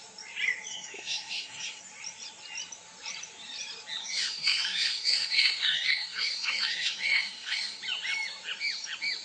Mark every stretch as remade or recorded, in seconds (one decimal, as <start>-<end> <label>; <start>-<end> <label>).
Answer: 0.0-0.7 recorded; 0.7-1.8 remade; 1.8-4.0 recorded; 4.0-7.8 remade; 7.8-9.2 recorded